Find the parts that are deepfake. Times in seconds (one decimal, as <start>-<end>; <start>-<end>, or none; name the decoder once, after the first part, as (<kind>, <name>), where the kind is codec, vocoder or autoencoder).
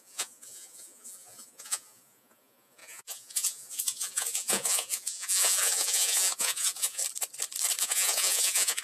0.0-7.0 (vocoder, Vocos); 7.8-8.8